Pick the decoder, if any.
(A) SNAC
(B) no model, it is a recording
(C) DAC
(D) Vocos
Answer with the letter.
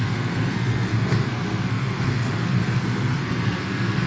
A